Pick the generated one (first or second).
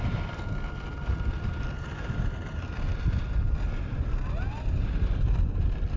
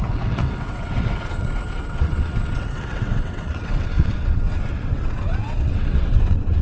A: second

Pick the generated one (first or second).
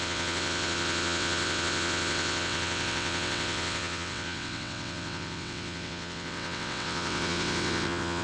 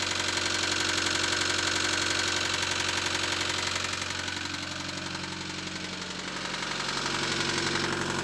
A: first